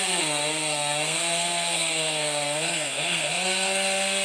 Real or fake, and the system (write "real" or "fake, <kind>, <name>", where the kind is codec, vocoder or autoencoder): fake, codec, SNAC